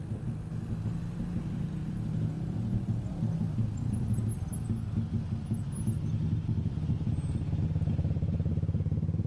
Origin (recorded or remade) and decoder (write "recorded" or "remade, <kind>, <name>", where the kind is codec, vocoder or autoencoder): recorded